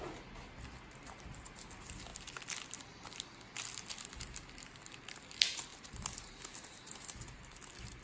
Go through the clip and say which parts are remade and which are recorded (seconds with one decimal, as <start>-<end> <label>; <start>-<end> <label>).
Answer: 0.0-5.7 recorded; 5.7-6.3 remade; 6.3-8.0 recorded